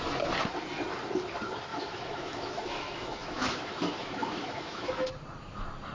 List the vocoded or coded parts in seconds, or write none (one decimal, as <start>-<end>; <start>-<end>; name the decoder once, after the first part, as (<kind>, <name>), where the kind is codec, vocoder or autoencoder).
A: 1.7-5.1 (autoencoder, DAC-VAE)